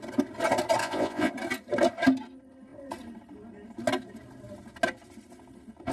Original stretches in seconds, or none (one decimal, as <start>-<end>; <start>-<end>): 0.0-0.8; 1.3-5.9

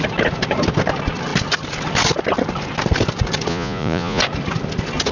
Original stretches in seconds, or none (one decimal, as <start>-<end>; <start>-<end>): 0.0-3.5; 4.2-5.1

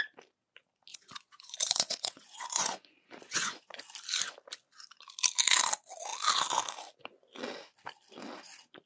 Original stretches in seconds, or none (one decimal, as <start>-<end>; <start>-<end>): 0.0-0.9; 3.8-8.9

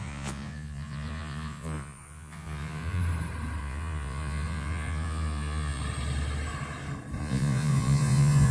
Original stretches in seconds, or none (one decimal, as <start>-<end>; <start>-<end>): 3.0-3.6; 5.8-7.2

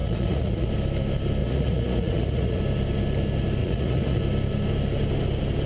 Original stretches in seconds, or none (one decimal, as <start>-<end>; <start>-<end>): 0.7-1.4; 2.6-3.6; 4.2-5.7

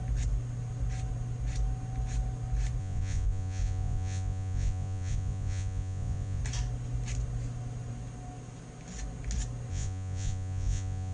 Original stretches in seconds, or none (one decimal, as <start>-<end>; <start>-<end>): 0.0-2.8; 6.4-9.7

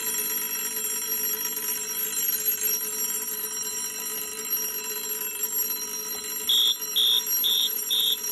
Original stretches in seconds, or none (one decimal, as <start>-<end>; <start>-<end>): 0.0-7.4